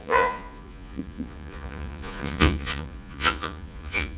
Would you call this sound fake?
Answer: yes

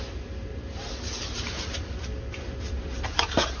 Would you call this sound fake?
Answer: no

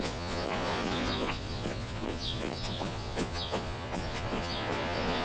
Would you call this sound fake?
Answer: yes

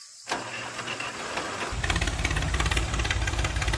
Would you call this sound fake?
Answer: no